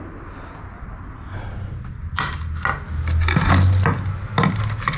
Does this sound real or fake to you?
real